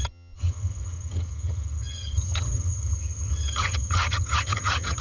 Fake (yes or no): yes